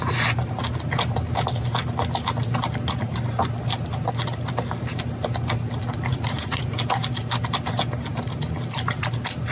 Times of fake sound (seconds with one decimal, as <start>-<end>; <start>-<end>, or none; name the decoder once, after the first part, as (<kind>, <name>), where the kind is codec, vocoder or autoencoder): 6.1-6.7 (vocoder, Vocos)